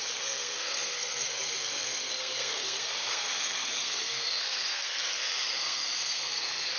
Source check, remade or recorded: remade